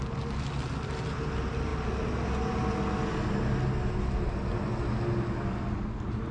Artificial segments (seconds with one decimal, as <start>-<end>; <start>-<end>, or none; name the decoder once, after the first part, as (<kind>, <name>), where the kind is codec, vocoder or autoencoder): none